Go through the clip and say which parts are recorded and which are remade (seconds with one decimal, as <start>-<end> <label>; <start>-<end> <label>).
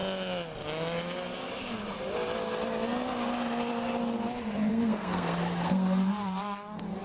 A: 0.0-4.7 recorded; 4.7-7.0 remade